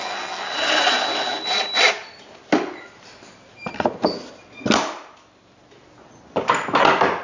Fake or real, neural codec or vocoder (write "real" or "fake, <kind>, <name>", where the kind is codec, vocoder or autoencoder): real